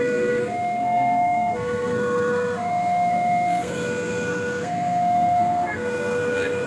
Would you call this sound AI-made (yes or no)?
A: yes